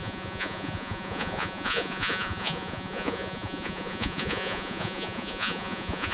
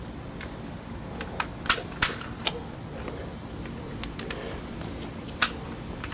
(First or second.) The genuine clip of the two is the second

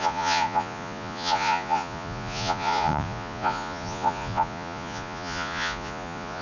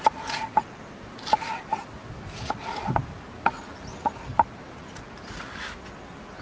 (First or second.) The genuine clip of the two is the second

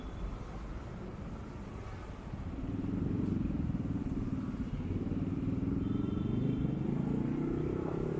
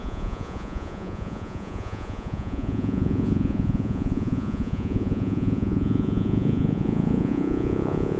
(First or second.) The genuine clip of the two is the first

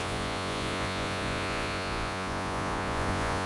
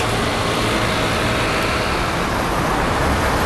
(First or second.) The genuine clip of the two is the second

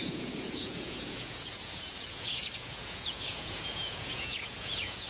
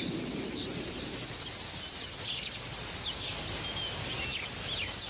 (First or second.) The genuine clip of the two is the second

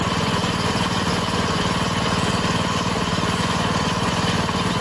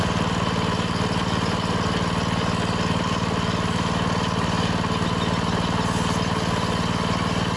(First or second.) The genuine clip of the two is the second